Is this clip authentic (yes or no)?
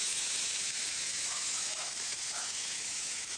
no